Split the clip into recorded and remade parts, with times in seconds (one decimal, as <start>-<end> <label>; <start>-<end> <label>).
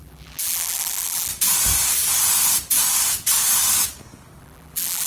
0.0-1.3 remade; 1.3-4.4 recorded; 4.4-5.1 remade